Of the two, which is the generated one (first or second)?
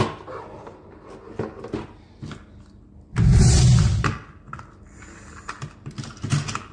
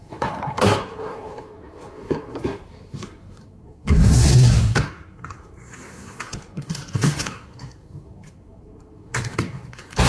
second